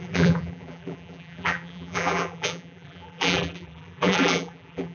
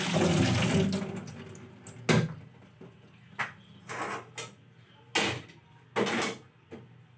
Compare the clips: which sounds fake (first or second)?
first